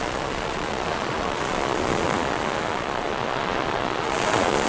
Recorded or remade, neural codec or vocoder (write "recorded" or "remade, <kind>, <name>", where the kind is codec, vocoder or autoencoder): remade, vocoder, Vocos